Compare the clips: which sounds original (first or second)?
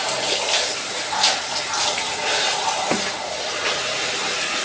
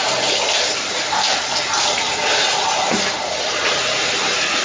first